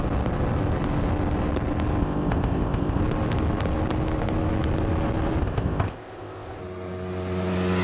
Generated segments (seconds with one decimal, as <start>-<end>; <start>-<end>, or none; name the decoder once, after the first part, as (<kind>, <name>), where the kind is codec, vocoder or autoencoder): 2.0-3.0 (codec, ZipCodec); 5.4-6.6